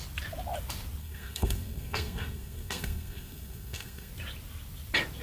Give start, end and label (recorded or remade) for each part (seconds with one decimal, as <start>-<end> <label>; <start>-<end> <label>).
0.0-1.0 recorded; 1.0-4.1 remade; 4.1-5.2 recorded